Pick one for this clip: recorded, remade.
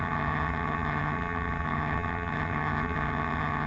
remade